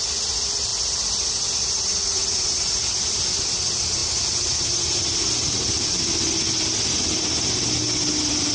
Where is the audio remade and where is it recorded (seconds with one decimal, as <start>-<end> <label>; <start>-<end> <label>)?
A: 0.0-1.9 recorded; 1.9-2.6 remade; 2.6-8.5 recorded